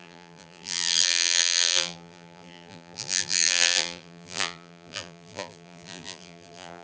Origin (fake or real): fake